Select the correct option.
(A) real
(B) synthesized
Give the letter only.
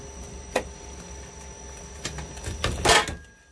A